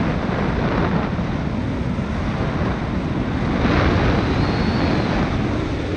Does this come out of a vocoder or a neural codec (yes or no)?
no